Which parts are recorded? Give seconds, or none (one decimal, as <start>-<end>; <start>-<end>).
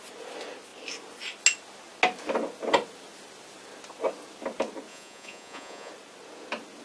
0.0-4.9; 5.9-6.8